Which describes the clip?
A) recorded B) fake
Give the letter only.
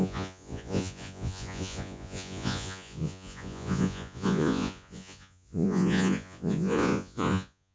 B